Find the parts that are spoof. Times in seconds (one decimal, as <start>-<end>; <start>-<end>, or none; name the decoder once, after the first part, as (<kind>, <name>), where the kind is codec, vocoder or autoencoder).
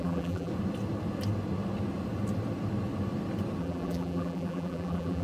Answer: 0.0-0.5 (vocoder, BigVGAN v2); 3.6-5.2